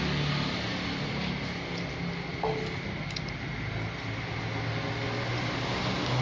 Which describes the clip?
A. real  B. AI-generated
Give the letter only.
A